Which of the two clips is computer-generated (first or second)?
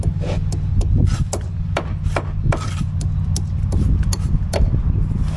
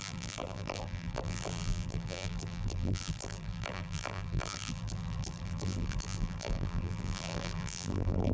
second